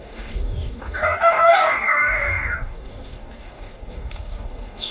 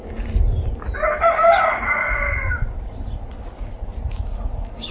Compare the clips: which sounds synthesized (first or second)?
first